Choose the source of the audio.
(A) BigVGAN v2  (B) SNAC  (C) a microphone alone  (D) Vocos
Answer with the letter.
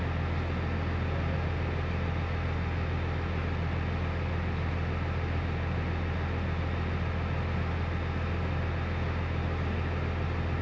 C